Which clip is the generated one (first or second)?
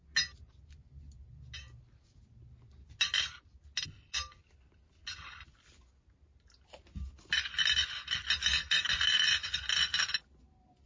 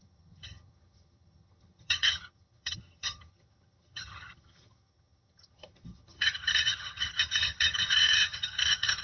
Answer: second